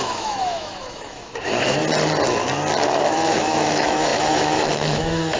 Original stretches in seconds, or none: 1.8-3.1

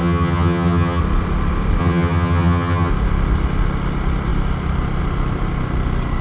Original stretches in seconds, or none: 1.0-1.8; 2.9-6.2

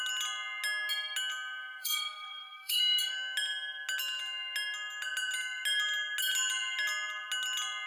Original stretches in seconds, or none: 0.0-1.8; 2.8-7.9

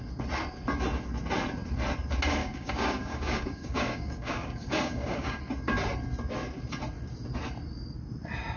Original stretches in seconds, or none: 0.0-2.4; 5.4-8.6

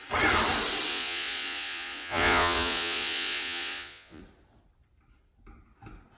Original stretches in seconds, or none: 0.0-0.9; 4.2-6.2